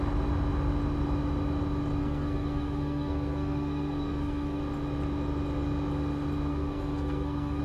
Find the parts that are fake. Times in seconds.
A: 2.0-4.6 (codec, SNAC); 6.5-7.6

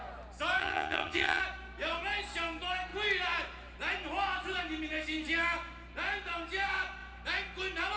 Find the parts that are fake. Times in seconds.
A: 0.6-1.4 (vocoder, HiFi-GAN)

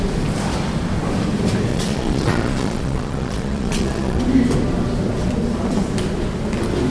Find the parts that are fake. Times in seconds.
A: 1.7-4.2 (vocoder, Vocos)

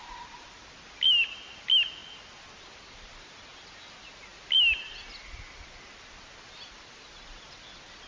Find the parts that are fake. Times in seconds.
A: none

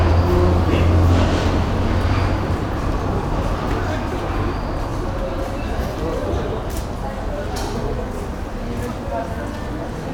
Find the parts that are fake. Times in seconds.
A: none

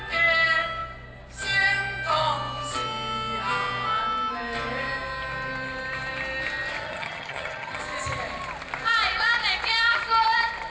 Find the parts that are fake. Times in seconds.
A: 6.8-7.8 (vocoder, HiFi-GAN)

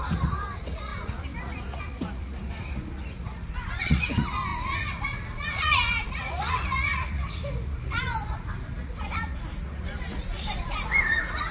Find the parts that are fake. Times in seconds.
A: 0.0-11.5 (vocoder, Vocos)